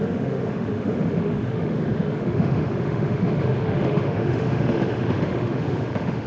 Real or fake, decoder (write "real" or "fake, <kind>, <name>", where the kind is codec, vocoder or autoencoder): fake, autoencoder, DAC-VAE